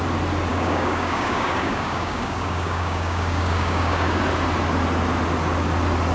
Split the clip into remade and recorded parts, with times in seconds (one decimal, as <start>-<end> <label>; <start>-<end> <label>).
0.0-0.5 recorded; 0.5-4.2 remade; 4.2-6.1 recorded